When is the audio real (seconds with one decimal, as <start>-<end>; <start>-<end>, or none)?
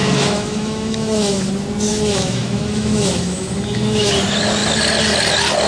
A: 1.5-1.9; 4.1-5.7